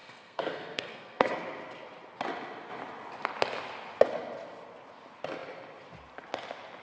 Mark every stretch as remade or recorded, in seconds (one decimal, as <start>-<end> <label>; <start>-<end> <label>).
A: 0.0-1.3 remade; 1.3-6.8 recorded